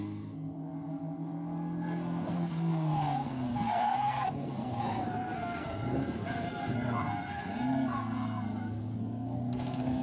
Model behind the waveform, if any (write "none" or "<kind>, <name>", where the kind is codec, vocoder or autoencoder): codec, SNAC